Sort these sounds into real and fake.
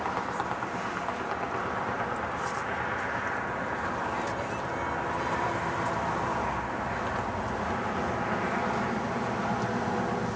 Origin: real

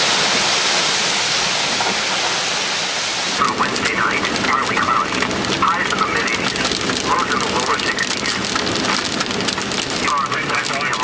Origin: real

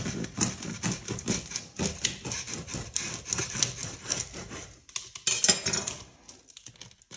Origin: real